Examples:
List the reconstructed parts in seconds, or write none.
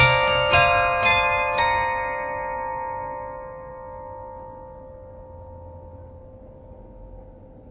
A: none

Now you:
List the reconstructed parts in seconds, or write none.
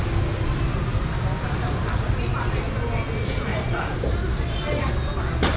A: 0.9-2.4; 3.5-4.9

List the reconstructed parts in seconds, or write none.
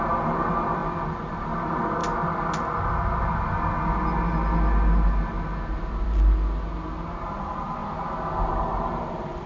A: 0.0-2.0; 7.2-7.8; 8.5-9.5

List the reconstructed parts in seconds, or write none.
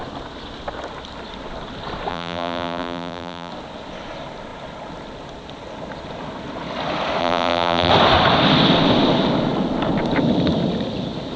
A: 2.1-3.5; 7.2-7.9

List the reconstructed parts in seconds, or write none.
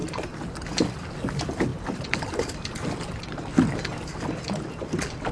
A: 0.0-0.6; 1.7-2.5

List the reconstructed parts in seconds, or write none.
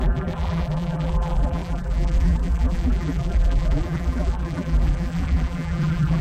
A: 0.0-6.2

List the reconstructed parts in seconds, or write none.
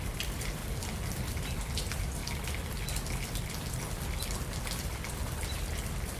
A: 0.0-0.6; 1.2-2.2; 4.8-6.2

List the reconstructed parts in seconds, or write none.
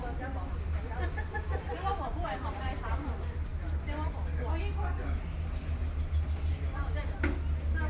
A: 2.1-3.1